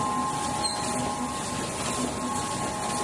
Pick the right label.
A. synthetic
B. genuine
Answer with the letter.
B